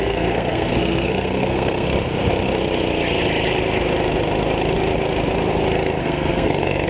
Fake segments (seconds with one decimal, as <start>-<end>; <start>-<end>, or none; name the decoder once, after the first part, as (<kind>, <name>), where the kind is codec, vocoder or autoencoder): 0.0-1.9 (codec, SNAC); 6.0-6.9

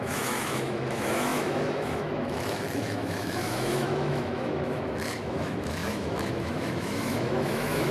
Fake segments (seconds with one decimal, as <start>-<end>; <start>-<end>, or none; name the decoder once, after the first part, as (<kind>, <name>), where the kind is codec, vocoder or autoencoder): 0.0-7.9 (autoencoder, DAC-VAE)

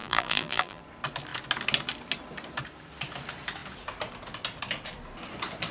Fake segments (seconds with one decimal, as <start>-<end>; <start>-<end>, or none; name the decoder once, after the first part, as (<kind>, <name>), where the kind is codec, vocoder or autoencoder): 0.0-0.8 (vocoder, BigVGAN v2)

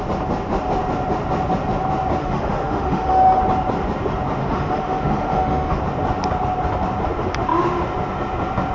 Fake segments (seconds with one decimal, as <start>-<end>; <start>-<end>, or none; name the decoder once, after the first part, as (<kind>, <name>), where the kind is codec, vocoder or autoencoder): 2.2-3.4 (autoencoder, DAC-VAE); 4.4-5.8